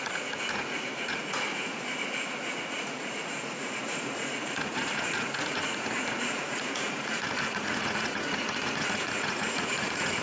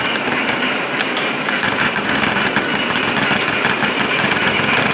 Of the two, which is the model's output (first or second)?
first